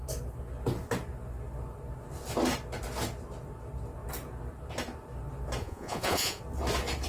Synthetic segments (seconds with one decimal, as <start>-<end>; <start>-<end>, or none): 5.6-6.4